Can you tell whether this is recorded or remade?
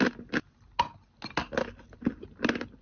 recorded